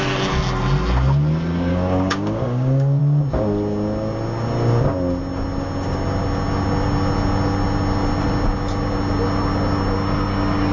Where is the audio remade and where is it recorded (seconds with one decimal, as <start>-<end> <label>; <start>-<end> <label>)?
0.0-1.7 recorded; 1.7-3.0 remade; 3.0-10.7 recorded